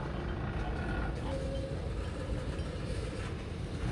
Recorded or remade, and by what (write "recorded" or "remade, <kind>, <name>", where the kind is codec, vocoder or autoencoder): recorded